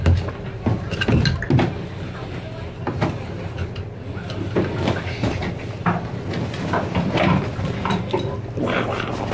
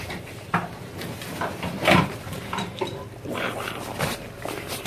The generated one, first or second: second